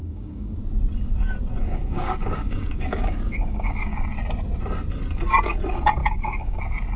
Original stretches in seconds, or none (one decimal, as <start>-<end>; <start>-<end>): 0.6-1.6; 4.0-6.0; 6.6-7.0